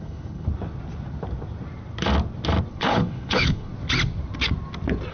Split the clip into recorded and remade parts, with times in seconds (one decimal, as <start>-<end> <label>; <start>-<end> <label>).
0.0-0.5 remade; 0.5-2.7 recorded; 2.7-3.7 remade; 3.7-5.1 recorded